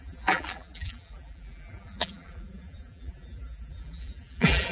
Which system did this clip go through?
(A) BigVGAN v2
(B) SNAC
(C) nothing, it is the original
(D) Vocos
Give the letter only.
A